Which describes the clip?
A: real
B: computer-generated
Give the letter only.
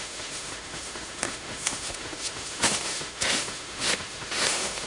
B